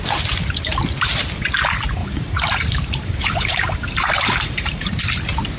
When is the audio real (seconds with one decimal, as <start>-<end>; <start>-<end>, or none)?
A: 0.0-2.0; 5.0-5.6